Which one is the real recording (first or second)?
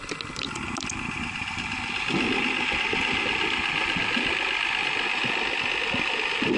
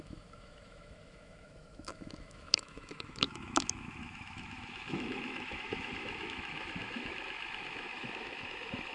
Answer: first